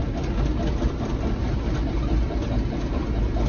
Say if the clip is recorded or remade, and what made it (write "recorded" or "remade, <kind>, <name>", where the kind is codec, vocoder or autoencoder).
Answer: recorded